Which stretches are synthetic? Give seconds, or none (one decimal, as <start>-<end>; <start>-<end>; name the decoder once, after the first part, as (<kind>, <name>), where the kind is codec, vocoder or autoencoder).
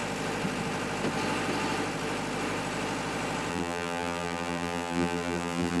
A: 3.5-5.8 (vocoder, BigVGAN v2)